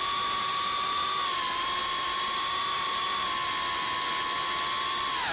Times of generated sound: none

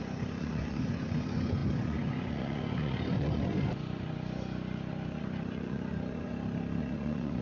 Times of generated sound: 0.0-6.3 (vocoder, Vocos); 6.8-7.4

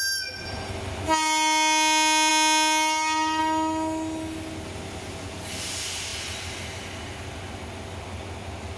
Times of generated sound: none

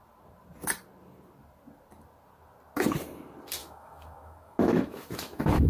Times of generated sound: 3.6-5.7 (autoencoder, DAC-VAE)

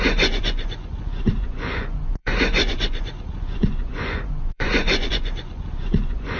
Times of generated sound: 0.0-6.4 (vocoder, Vocos)

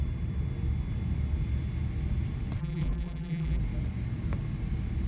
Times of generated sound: 2.6-3.6 (vocoder, BigVGAN v2)